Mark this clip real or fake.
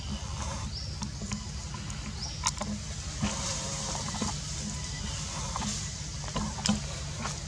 real